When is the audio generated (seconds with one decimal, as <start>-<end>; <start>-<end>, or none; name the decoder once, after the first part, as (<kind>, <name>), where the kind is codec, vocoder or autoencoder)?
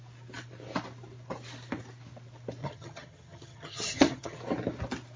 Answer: 2.6-4.4 (vocoder, HiFi-GAN)